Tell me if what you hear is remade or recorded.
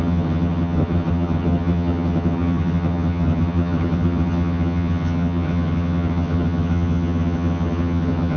remade